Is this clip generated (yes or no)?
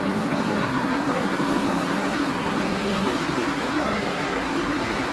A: yes